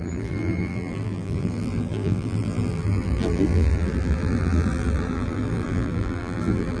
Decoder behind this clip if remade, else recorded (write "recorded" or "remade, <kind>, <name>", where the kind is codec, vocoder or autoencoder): remade, vocoder, BigVGAN v2